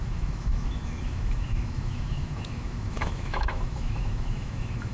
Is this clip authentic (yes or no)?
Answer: no